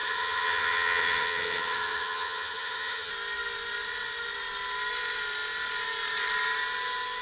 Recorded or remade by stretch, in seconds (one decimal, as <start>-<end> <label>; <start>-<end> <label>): 0.0-3.1 remade; 3.1-7.2 recorded